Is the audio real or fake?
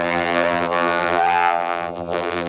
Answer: fake